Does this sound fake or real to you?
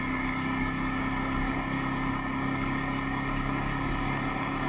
fake